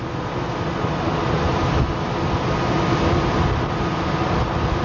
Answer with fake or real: real